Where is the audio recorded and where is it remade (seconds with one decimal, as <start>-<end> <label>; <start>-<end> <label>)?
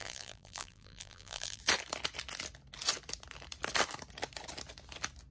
0.0-1.6 remade; 1.6-5.3 recorded